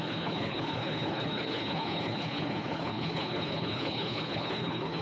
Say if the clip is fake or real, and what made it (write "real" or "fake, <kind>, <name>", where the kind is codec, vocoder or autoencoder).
fake, codec, HILCodec